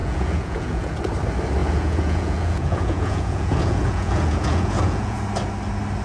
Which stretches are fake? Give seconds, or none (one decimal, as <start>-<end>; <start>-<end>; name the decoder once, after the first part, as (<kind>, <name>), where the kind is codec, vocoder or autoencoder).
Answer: 0.0-1.0 (vocoder, Vocos); 1.6-5.2